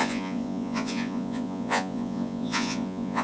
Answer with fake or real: fake